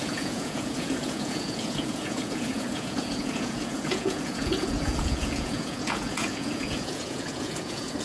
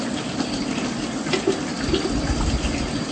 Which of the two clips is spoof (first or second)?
first